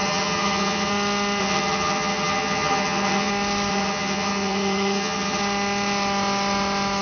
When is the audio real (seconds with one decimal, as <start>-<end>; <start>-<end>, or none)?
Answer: 0.9-1.4; 3.3-3.7; 5.4-7.0

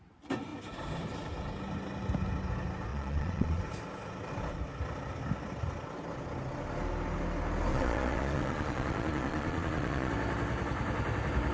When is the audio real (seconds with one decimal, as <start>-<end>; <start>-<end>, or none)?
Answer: 0.0-2.9; 3.6-7.7; 10.1-11.5

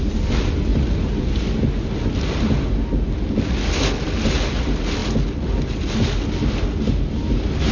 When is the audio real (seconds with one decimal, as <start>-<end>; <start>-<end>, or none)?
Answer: 0.0-7.7